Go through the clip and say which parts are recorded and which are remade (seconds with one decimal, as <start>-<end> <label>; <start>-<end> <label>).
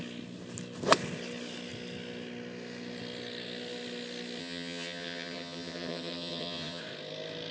0.0-4.4 recorded; 4.4-6.8 remade; 6.8-7.5 recorded